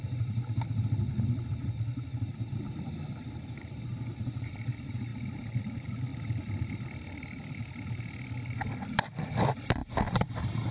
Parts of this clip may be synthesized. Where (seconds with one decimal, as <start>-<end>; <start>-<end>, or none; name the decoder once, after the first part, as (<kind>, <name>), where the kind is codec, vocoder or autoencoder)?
none

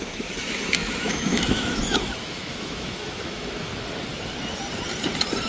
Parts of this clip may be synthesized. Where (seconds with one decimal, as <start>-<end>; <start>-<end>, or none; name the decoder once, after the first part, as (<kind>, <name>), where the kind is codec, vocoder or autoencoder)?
0.0-3.7 (autoencoder, DAC-VAE)

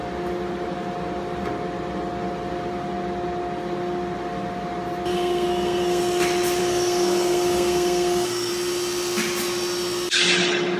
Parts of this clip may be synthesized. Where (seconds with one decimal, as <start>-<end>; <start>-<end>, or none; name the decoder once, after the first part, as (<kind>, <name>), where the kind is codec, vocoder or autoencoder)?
5.1-6.0 (codec, SNAC); 6.6-8.5

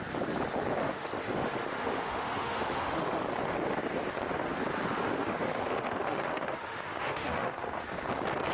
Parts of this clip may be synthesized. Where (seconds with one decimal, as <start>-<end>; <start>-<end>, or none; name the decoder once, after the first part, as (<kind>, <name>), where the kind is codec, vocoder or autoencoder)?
0.8-3.2 (autoencoder, DAC-VAE); 5.0-7.9

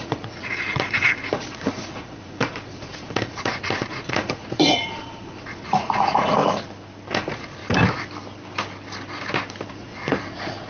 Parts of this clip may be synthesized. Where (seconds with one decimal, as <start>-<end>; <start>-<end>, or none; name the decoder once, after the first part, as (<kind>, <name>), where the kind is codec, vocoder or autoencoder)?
0.0-6.4 (vocoder, Vocos); 7.1-7.6; 9.7-10.7